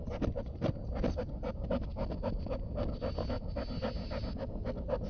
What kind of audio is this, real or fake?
real